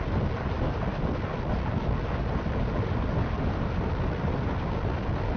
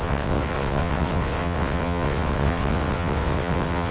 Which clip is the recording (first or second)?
first